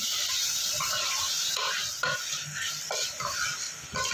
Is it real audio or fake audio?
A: real